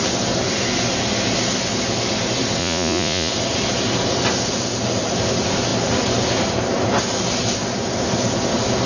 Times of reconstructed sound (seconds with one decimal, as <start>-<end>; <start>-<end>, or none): 2.6-3.3